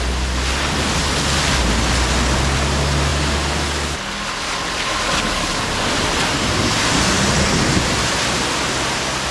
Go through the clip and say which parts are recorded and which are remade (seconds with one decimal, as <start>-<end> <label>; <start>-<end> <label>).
0.0-9.3 recorded